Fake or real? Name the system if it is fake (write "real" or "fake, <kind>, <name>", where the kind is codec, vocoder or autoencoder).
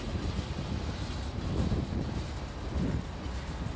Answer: real